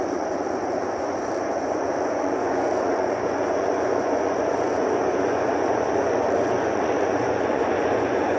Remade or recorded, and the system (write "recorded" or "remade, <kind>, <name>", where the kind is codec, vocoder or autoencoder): remade, vocoder, Vocos